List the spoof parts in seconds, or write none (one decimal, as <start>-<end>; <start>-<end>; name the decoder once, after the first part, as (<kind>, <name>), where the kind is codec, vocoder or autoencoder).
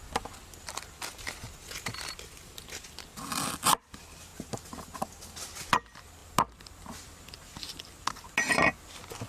none